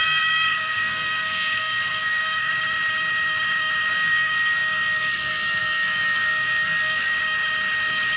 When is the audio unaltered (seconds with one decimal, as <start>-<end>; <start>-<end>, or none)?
2.5-3.9; 7.2-8.2